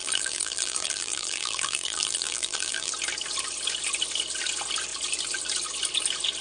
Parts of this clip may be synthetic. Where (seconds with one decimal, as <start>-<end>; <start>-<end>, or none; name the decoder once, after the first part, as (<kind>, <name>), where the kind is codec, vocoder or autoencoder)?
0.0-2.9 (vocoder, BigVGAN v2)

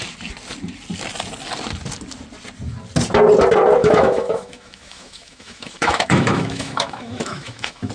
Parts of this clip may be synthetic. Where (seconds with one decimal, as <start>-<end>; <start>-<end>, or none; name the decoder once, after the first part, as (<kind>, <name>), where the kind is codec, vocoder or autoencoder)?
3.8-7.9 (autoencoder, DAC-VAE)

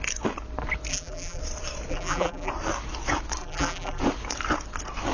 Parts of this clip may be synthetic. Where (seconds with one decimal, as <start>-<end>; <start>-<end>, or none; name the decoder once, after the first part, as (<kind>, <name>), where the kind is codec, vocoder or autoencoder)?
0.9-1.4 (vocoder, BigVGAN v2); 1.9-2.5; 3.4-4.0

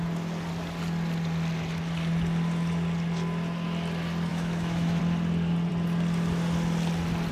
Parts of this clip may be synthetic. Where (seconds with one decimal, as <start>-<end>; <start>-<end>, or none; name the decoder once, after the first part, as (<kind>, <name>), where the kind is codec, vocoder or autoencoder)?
4.3-5.0 (autoencoder, DAC-VAE)

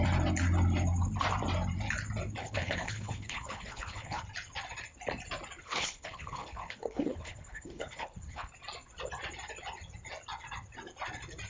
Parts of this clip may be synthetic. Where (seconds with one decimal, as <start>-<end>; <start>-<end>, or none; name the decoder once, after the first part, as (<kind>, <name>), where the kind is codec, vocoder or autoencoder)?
2.4-4.2 (codec, HILCodec); 5.6-8.5

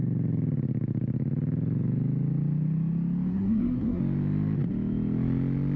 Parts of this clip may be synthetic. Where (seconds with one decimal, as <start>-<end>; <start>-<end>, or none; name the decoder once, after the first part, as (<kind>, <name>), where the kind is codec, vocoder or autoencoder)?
3.3-4.0 (codec, SNAC)